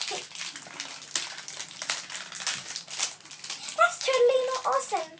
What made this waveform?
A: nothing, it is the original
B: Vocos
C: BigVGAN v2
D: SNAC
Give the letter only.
A